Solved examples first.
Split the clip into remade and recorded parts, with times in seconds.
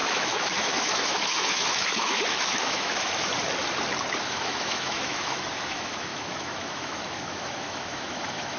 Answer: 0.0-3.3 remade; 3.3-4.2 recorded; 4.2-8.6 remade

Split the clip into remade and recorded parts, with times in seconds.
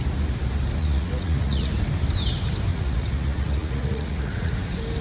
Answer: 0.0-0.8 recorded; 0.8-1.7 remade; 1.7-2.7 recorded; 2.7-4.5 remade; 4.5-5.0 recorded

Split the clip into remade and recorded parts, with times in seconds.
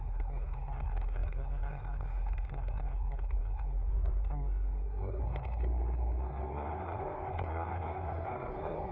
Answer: 0.0-8.9 remade